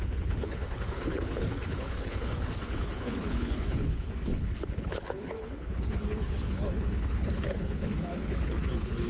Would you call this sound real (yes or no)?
no